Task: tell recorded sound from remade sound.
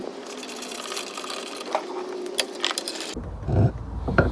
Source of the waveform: recorded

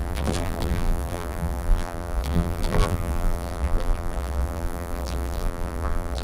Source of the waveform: remade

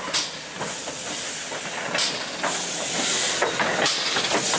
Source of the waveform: recorded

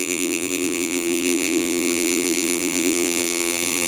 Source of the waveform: remade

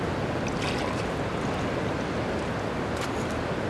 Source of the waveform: recorded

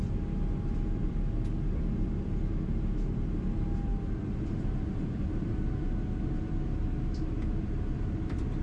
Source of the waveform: recorded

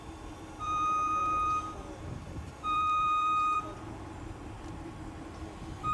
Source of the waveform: remade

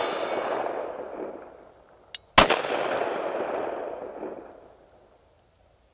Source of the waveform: recorded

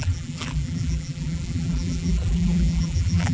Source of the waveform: remade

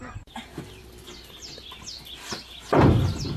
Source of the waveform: recorded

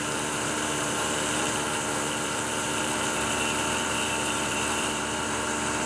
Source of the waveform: remade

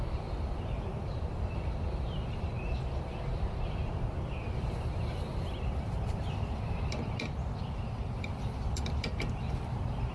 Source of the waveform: remade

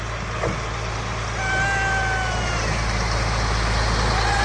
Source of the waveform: recorded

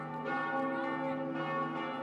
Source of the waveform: recorded